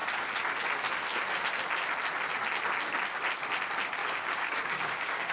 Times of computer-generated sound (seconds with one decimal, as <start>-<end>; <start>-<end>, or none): 4.0-5.3